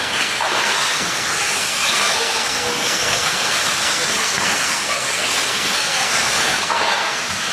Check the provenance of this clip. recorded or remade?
remade